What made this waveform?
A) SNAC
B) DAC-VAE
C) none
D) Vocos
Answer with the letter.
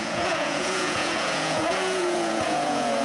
D